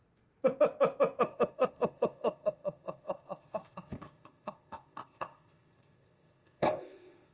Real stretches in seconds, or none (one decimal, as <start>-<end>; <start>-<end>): 0.0-1.2